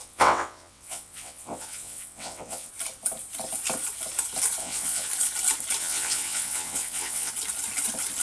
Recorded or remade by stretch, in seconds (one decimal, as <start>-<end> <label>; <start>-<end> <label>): 0.0-2.7 remade; 2.7-4.6 recorded; 4.6-5.1 remade; 5.1-5.8 recorded; 5.8-7.3 remade; 7.3-8.2 recorded

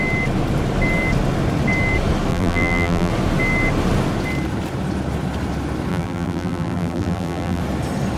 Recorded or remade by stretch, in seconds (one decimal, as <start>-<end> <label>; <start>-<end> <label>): 0.0-2.3 recorded; 2.3-3.1 remade; 3.1-5.9 recorded; 5.9-7.6 remade; 7.6-8.2 recorded

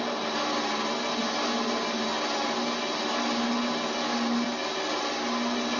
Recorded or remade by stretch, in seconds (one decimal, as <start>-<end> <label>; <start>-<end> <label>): 0.0-5.8 recorded

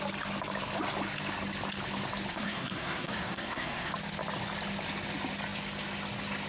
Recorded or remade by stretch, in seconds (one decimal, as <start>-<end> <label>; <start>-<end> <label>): 0.0-2.3 recorded; 2.3-3.9 remade; 3.9-6.5 recorded